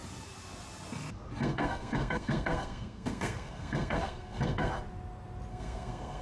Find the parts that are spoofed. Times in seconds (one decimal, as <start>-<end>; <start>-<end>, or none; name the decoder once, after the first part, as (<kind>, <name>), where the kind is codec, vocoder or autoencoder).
1.4-4.7 (codec, SNAC); 5.5-6.2